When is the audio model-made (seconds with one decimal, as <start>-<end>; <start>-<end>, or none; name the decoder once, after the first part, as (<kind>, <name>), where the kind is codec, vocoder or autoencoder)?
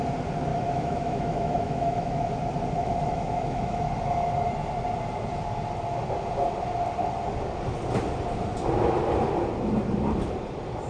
0.5-2.3 (autoencoder, DAC-VAE); 2.8-3.8